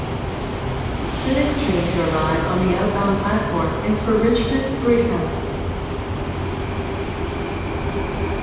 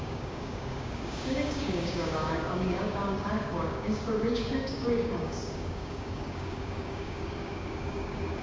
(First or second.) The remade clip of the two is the second